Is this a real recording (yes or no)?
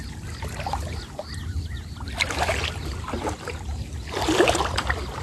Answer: yes